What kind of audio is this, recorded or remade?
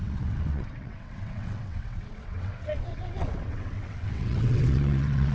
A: remade